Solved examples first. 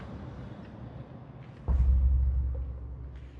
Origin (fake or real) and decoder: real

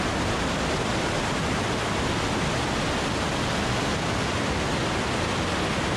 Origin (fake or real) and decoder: real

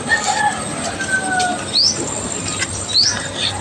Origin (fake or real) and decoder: real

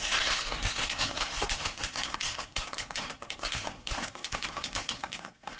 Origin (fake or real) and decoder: fake, codec, SNAC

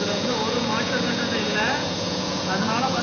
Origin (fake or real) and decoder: fake, vocoder, Vocos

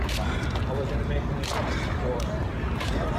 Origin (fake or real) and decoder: fake, vocoder, BigVGAN v2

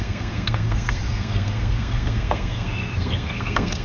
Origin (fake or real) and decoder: fake, codec, SNAC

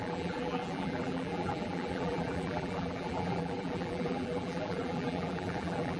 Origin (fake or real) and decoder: fake, vocoder, BigVGAN v2